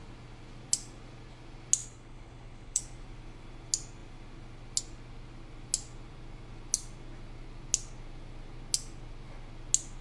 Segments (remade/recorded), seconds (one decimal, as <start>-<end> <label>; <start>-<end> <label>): 0.0-1.8 recorded; 1.8-2.8 remade; 2.8-10.0 recorded